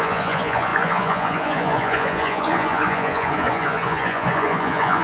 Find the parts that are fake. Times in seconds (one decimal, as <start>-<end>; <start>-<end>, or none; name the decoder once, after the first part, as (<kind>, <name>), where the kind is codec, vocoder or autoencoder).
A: 0.0-5.0 (vocoder, Vocos)